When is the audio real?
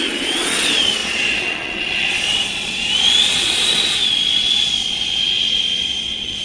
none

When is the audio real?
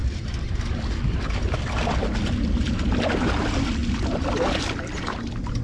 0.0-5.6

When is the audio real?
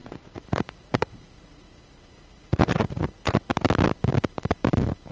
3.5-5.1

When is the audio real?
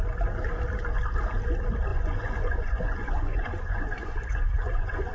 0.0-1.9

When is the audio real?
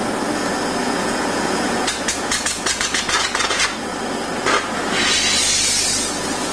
0.0-0.8; 3.9-6.5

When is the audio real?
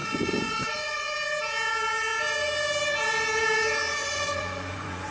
1.1-4.0